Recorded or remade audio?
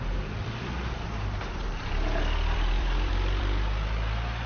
remade